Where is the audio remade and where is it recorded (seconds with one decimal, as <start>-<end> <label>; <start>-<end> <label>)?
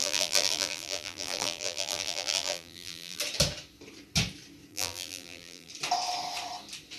0.0-3.2 remade; 3.2-4.7 recorded; 4.7-5.7 remade; 5.7-7.0 recorded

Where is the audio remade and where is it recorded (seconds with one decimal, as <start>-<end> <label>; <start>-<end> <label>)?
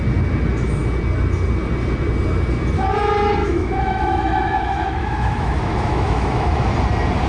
0.0-3.4 recorded; 3.4-6.7 remade; 6.7-7.3 recorded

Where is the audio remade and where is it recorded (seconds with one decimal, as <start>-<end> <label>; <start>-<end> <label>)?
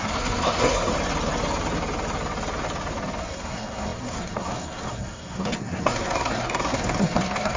0.0-0.9 remade; 0.9-3.2 recorded; 3.2-7.6 remade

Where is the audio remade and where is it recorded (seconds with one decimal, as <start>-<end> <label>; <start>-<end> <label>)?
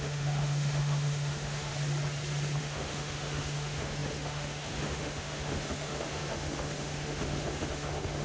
0.0-1.7 remade; 1.7-2.6 recorded; 2.6-8.2 remade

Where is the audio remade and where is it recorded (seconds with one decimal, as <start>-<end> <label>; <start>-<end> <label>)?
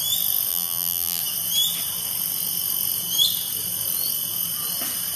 0.0-0.5 recorded; 0.5-1.2 remade; 1.2-5.2 recorded